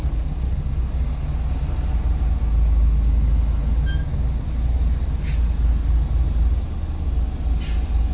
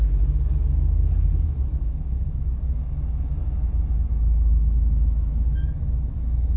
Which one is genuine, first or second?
first